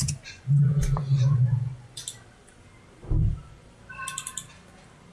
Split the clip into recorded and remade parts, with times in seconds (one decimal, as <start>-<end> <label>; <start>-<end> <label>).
0.0-2.0 remade; 2.0-5.1 recorded